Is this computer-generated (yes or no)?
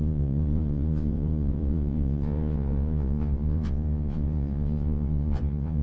yes